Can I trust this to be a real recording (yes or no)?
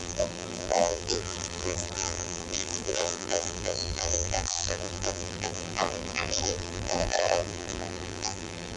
no